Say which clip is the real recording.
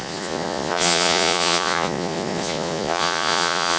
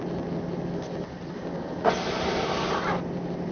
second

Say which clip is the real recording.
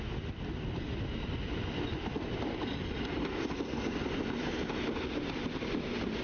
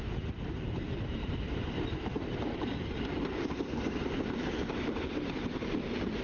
first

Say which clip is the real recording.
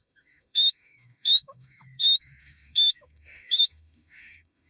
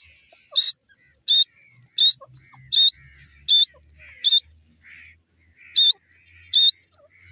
second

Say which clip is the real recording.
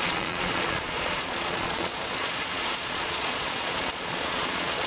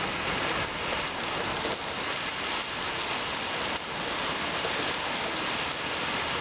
second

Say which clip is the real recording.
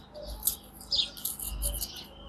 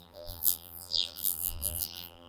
first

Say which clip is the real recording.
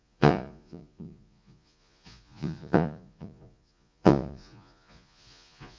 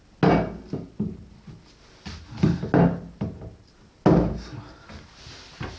second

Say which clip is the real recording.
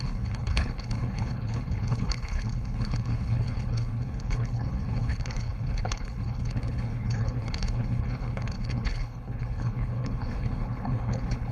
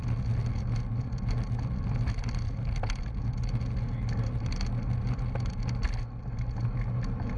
second